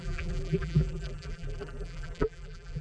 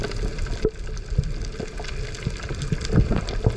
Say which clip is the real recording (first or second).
second